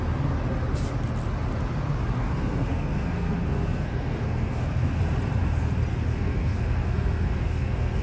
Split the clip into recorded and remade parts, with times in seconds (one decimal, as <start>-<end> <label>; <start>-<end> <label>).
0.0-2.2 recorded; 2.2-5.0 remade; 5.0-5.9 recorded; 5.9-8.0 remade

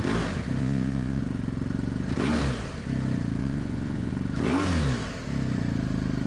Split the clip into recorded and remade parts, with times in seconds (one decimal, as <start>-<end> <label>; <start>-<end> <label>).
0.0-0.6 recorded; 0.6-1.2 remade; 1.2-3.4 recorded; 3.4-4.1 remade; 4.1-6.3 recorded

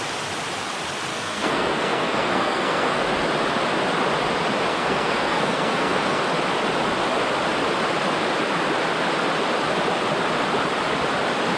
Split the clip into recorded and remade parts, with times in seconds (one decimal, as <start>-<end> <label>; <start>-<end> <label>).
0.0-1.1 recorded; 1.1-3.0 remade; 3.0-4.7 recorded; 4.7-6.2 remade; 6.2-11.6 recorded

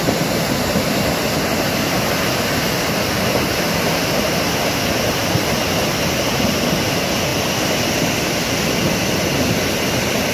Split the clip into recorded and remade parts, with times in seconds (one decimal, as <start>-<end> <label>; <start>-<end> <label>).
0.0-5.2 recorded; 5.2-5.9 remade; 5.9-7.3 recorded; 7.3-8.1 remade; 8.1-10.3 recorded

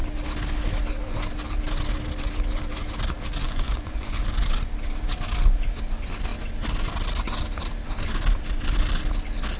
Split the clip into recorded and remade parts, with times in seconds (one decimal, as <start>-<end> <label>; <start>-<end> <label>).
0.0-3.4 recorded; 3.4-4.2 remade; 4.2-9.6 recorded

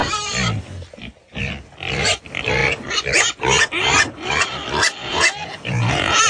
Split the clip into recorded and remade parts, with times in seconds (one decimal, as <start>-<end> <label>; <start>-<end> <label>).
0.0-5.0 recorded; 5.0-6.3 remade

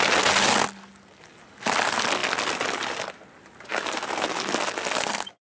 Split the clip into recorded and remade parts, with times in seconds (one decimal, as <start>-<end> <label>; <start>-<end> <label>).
0.0-5.6 recorded